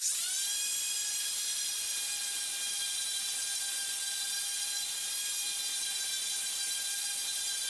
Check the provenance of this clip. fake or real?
real